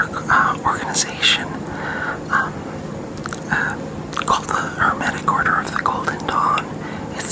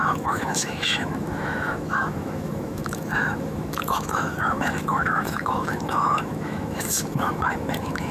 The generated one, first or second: second